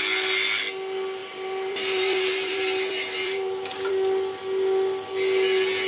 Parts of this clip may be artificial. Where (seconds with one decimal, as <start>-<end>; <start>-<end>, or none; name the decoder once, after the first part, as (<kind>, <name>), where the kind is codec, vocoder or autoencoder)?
1.2-3.9 (vocoder, BigVGAN v2)